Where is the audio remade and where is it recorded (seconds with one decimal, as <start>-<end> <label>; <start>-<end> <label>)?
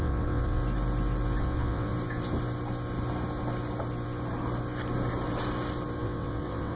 0.0-0.6 remade; 0.6-1.4 recorded; 1.4-1.9 remade; 1.9-6.0 recorded; 6.0-6.8 remade